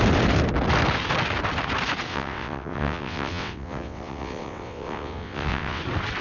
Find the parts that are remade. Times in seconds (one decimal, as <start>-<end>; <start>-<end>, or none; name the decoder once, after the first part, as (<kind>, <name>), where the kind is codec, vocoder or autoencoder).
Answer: 2.1-5.8 (vocoder, WaveNeXt)